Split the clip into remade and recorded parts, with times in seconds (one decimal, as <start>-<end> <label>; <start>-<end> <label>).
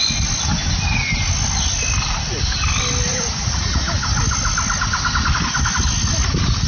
0.0-3.1 recorded; 3.1-3.8 remade; 3.8-6.7 recorded